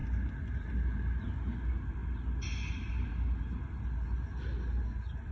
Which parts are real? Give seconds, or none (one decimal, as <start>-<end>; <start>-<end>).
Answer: 0.0-5.3